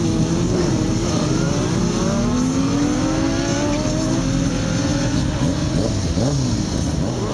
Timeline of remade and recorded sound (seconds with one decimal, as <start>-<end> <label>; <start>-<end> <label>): 0.0-7.3 recorded